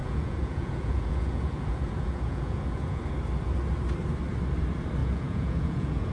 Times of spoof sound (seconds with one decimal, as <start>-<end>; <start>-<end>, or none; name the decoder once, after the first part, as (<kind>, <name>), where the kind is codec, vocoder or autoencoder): 0.0-3.0 (vocoder, Vocos); 5.0-6.1